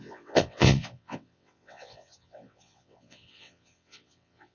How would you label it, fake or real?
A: fake